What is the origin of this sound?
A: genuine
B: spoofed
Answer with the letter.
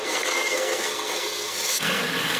B